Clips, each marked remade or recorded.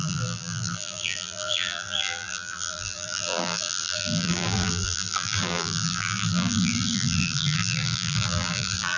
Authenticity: remade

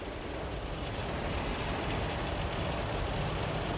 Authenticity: remade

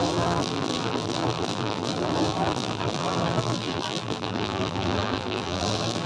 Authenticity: remade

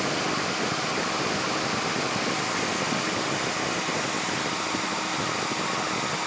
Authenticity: recorded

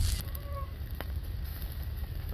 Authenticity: recorded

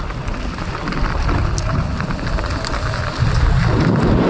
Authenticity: recorded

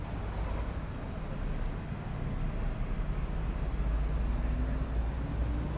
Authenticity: recorded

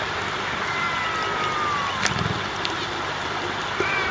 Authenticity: recorded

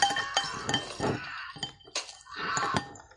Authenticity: recorded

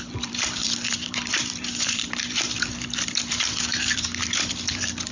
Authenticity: remade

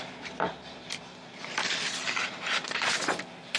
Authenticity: remade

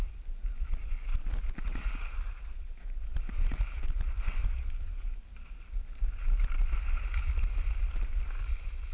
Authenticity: recorded